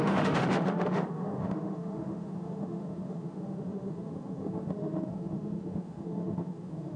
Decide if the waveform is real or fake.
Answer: fake